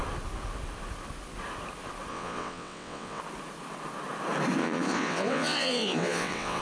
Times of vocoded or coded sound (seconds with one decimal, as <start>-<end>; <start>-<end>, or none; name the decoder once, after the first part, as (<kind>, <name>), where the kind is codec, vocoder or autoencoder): 2.1-3.2 (vocoder, WaveNeXt); 4.6-6.6